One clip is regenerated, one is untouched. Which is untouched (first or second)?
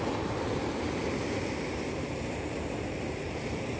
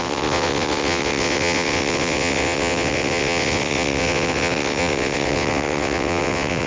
first